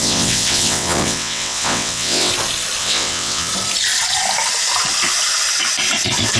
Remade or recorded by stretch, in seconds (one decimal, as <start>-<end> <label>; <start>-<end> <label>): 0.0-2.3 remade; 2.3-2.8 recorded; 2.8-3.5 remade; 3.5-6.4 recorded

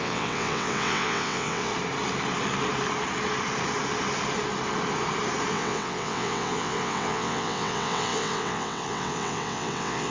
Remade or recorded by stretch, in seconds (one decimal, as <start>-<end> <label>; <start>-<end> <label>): 0.0-1.7 remade; 1.7-5.5 recorded; 5.5-10.1 remade

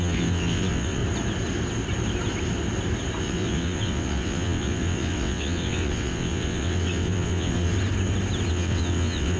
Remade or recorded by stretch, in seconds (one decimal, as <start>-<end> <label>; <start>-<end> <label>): 0.0-1.0 remade; 1.0-3.2 recorded; 3.2-7.7 remade; 7.7-8.5 recorded; 8.5-9.4 remade

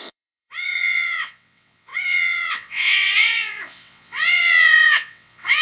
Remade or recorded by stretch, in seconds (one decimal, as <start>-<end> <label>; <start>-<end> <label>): 0.0-5.6 remade